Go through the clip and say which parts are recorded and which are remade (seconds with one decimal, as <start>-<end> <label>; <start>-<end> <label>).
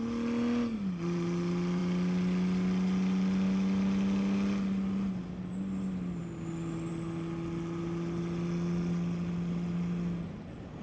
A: 0.0-10.8 recorded